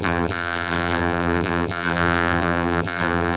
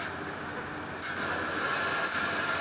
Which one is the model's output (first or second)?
first